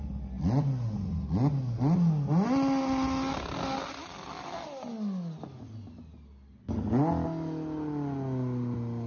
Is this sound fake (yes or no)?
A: no